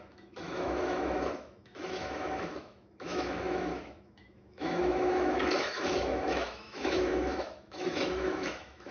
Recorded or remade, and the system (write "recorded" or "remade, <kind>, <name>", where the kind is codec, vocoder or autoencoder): remade, autoencoder, DAC-VAE